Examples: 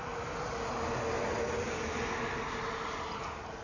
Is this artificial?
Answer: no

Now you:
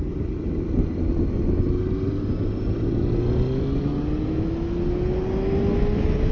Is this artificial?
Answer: no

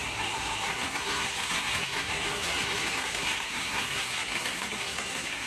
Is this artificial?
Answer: yes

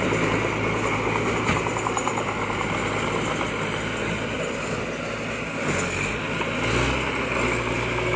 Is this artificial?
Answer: no